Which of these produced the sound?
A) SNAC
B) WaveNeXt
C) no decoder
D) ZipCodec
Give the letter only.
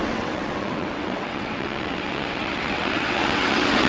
B